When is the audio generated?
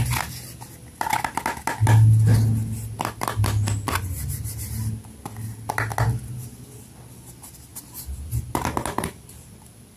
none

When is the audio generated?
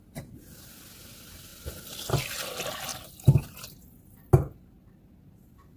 none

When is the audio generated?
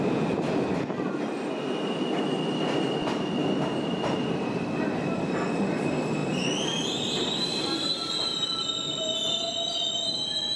6.2-9.0 (vocoder, BigVGAN v2)